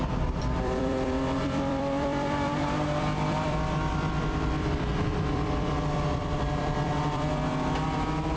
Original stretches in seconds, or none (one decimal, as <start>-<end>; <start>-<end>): none